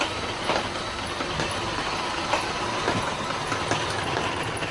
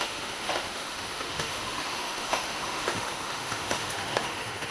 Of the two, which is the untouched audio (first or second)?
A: first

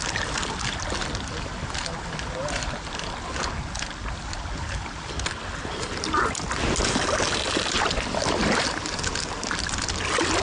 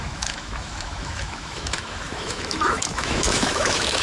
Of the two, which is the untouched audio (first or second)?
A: first